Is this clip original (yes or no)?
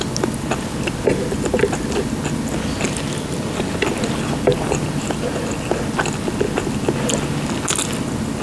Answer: yes